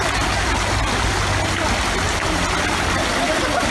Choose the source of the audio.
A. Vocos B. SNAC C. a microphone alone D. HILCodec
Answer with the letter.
C